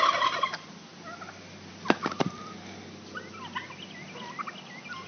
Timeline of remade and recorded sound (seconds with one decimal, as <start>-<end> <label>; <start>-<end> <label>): 0.0-5.1 recorded